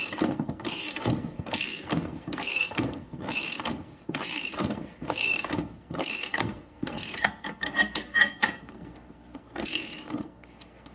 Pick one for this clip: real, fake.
fake